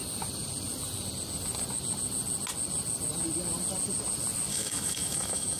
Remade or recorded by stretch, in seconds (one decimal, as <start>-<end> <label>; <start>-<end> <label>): 0.0-4.5 recorded; 4.5-5.6 remade